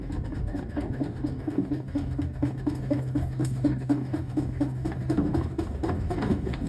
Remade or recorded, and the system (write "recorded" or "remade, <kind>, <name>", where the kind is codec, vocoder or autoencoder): remade, codec, DAC